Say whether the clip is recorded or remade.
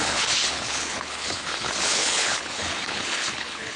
remade